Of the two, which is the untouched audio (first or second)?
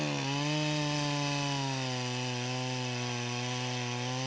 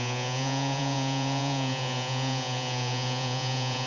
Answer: first